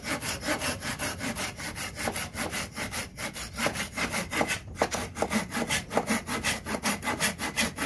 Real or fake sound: real